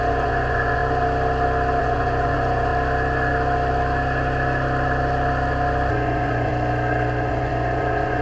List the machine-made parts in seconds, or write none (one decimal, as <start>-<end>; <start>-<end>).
0.0-0.8; 1.8-2.7; 5.9-6.5; 7.3-8.2